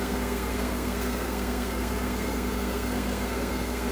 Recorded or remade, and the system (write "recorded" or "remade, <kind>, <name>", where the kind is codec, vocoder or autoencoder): remade, codec, SNAC